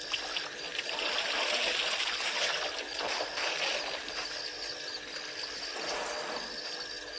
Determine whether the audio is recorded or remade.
recorded